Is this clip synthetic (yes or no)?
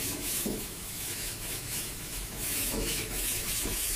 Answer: yes